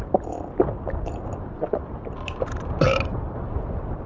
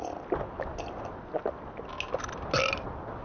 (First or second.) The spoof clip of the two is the first